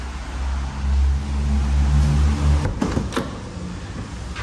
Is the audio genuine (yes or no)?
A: yes